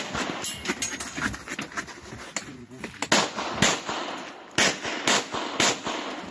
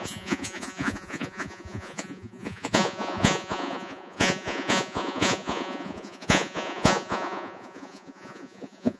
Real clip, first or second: first